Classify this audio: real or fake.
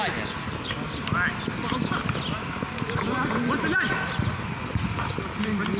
real